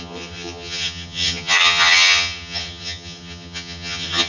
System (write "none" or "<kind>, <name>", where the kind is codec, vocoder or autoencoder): vocoder, HiFi-GAN